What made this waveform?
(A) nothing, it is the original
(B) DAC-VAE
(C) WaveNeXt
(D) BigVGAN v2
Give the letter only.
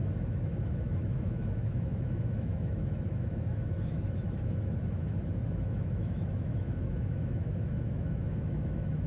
B